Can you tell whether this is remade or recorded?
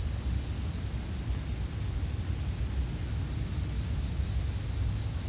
recorded